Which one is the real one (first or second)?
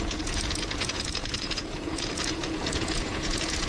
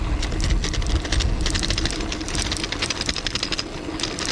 second